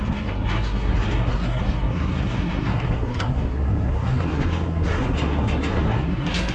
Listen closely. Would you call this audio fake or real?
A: fake